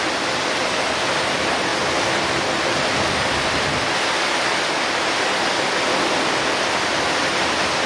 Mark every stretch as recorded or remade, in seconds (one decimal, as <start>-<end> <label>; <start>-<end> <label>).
0.0-7.9 recorded